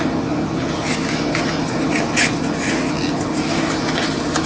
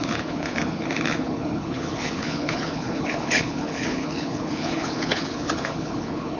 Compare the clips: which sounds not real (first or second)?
second